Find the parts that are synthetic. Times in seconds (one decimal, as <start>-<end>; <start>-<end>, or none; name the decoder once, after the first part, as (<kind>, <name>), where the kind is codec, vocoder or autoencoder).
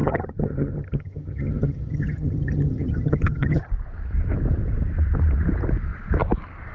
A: 0.0-3.7 (vocoder, HiFi-GAN)